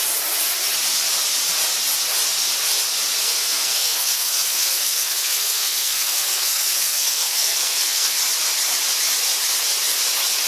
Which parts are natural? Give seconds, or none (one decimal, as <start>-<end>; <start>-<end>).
0.0-3.2; 8.2-10.5